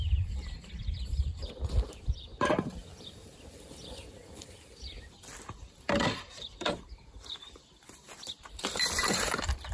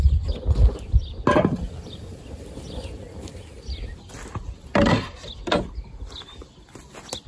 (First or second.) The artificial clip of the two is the first